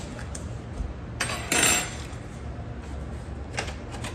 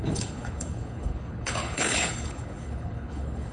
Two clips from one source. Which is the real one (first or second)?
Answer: first